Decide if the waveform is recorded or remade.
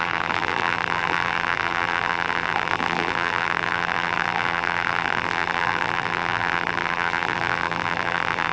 remade